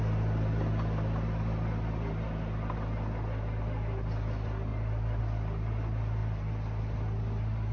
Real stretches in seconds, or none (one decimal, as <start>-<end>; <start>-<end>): 0.0-7.7